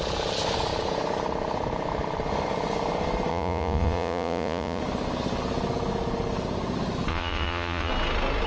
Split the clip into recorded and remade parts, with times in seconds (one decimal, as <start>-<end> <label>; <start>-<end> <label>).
0.0-3.3 recorded; 3.3-4.8 remade; 4.8-7.1 recorded; 7.1-7.9 remade; 7.9-8.5 recorded